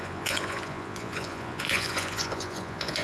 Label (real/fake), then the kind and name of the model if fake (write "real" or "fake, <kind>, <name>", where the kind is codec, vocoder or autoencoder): fake, vocoder, Vocos